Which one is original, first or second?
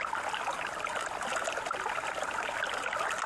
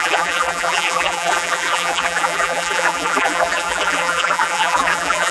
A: first